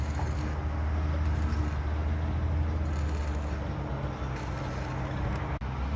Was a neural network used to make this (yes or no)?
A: no